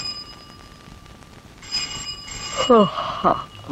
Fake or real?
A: fake